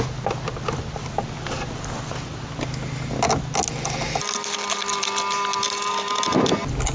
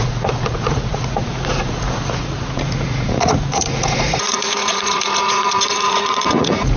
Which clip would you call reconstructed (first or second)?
second